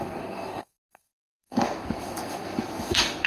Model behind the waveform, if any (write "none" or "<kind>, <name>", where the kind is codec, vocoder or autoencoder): codec, SNAC